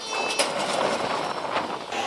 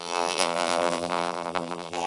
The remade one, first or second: second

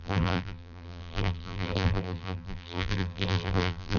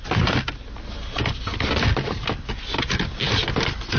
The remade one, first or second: first